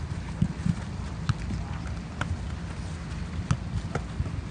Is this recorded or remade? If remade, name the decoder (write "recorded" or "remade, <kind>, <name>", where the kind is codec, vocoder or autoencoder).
recorded